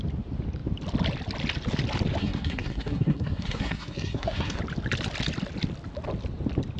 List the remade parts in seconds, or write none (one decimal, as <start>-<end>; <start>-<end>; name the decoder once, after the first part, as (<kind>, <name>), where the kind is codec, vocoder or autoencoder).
2.2-4.6 (codec, SNAC)